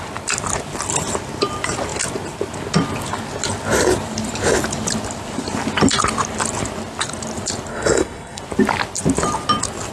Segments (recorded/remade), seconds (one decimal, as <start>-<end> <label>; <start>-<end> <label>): 0.0-7.7 recorded; 7.7-8.4 remade; 8.4-9.9 recorded